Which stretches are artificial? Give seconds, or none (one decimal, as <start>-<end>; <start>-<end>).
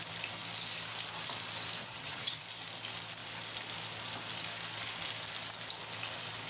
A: 1.8-2.4